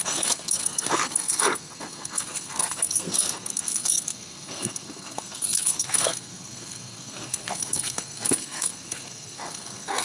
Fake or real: fake